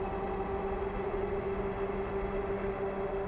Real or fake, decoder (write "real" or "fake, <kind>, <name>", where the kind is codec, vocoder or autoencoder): real